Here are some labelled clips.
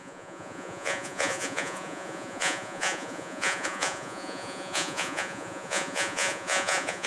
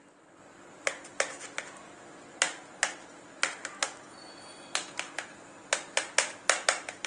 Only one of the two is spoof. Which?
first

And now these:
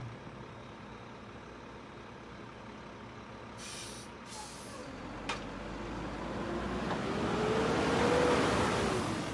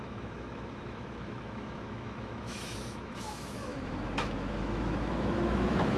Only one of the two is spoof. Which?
second